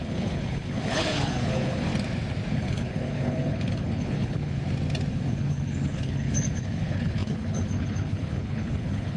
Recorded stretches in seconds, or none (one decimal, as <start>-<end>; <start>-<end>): 1.9-2.5; 4.6-5.1